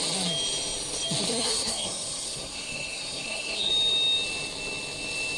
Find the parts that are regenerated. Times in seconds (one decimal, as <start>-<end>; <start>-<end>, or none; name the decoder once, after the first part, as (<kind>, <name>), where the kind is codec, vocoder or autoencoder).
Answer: 1.3-3.7 (codec, SNAC)